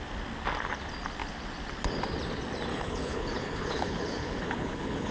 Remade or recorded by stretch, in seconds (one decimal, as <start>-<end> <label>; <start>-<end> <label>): 0.0-2.7 recorded; 2.7-5.1 remade